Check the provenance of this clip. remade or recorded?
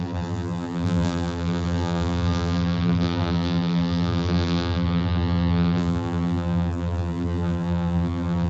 remade